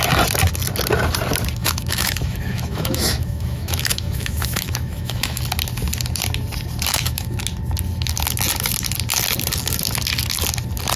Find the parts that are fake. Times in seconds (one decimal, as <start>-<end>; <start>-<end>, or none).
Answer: 1.6-5.4; 6.9-7.4